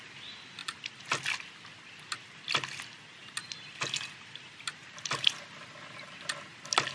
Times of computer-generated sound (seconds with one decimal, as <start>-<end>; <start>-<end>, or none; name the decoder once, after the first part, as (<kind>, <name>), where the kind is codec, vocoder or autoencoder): none